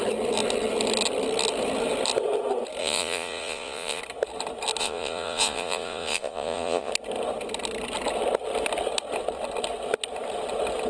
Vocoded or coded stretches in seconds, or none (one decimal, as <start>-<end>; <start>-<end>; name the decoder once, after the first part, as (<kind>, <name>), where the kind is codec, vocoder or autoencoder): 2.8-4.0 (vocoder, Vocos); 4.8-6.9